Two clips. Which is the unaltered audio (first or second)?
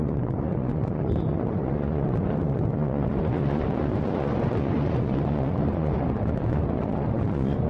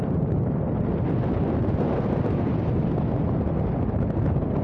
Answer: second